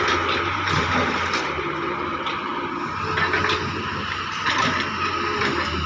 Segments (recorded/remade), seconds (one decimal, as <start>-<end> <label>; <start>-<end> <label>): 0.0-2.5 remade; 2.5-3.7 recorded; 3.7-5.9 remade